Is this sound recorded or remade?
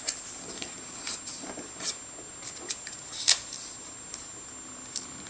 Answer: recorded